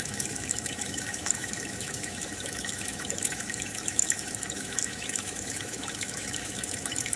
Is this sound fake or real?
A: fake